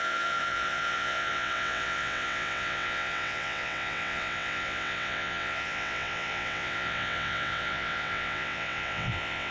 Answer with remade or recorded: remade